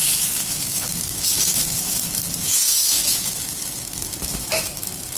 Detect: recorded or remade remade